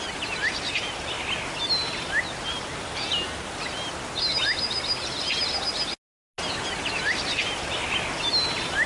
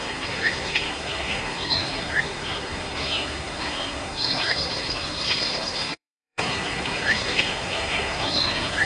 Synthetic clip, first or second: second